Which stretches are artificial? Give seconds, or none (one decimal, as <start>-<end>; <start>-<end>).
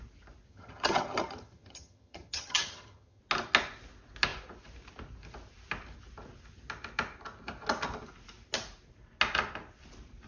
0.5-3.2